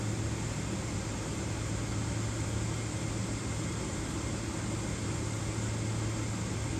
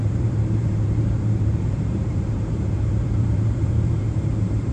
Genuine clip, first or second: first